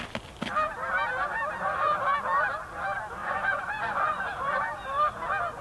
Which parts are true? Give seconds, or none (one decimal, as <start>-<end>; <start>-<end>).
0.0-3.2; 4.3-5.6